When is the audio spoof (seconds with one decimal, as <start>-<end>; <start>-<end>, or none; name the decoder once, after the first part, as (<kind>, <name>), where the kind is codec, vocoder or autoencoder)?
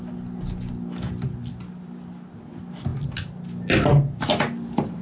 none